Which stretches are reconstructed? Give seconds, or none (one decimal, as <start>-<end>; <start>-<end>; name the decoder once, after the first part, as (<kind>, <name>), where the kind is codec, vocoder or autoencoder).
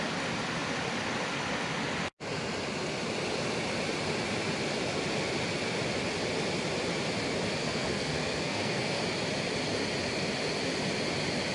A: 7.6-9.0 (codec, SNAC)